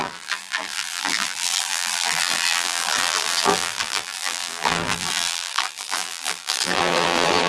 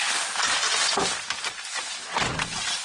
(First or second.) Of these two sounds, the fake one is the first